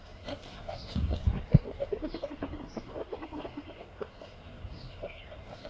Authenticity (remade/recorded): remade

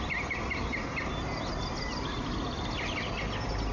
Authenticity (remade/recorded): recorded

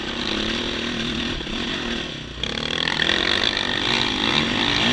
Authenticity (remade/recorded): recorded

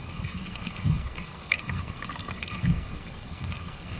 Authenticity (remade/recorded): remade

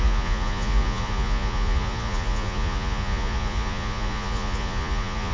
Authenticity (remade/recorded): remade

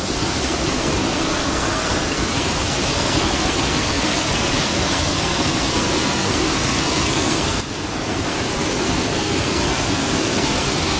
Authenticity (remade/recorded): remade